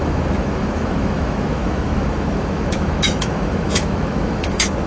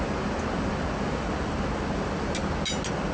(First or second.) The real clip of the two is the second